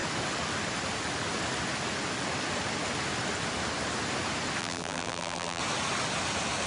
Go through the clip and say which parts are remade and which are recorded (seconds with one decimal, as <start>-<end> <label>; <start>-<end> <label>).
0.0-4.6 recorded; 4.6-5.6 remade; 5.6-6.7 recorded